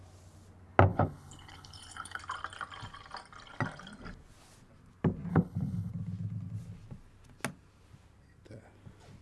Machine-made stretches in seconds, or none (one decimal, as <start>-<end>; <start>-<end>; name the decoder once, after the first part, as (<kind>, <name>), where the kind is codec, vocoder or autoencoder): 0.9-2.2 (codec, HILCodec); 5.3-5.9